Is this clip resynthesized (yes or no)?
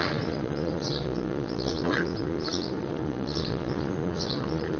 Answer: yes